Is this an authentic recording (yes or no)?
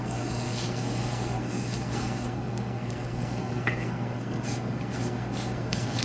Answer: no